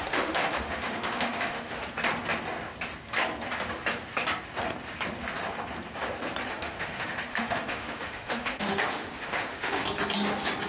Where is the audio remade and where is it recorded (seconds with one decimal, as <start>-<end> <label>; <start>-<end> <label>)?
0.0-1.8 remade; 1.8-6.5 recorded; 6.5-9.8 remade; 9.8-10.7 recorded